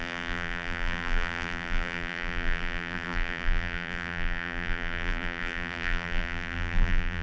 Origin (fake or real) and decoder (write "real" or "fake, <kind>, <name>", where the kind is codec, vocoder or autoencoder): fake, vocoder, BigVGAN v2